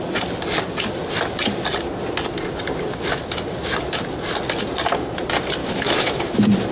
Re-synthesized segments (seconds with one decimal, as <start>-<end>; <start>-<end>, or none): 5.6-6.2